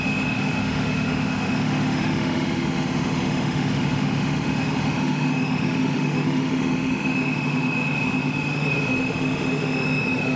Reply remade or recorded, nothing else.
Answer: remade